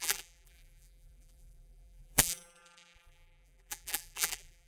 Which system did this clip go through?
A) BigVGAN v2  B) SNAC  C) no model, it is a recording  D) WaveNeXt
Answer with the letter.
A